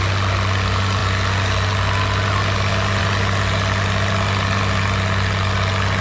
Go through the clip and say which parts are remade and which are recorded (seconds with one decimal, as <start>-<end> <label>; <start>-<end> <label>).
0.0-6.0 recorded